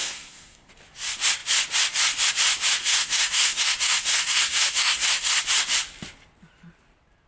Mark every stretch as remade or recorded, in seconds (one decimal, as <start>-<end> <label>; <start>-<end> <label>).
0.0-0.7 remade; 0.7-2.8 recorded; 2.8-5.4 remade; 5.4-7.3 recorded